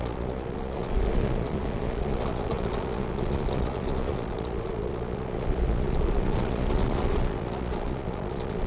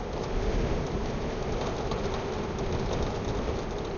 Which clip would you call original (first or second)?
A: second